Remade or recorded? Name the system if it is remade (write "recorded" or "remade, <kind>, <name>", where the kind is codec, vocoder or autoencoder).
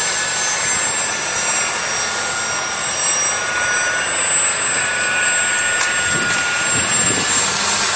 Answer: recorded